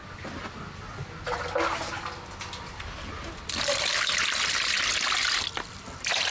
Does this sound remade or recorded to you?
recorded